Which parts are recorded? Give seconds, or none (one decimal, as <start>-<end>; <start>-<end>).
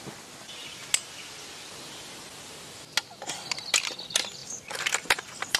0.0-4.4